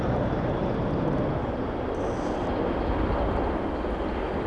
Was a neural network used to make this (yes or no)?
no